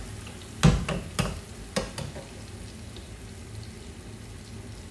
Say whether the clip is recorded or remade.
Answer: recorded